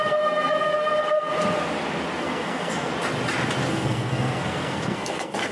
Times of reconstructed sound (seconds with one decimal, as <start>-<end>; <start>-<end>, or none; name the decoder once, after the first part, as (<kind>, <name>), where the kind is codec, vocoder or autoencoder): 0.0-1.3 (codec, SNAC); 2.2-2.9; 3.7-5.5